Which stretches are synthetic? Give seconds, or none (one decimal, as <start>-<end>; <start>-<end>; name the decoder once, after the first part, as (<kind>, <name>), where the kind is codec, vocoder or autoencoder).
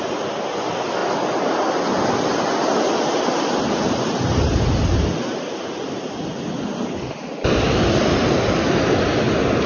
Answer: none